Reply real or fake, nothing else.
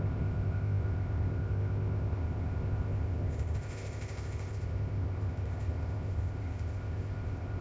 fake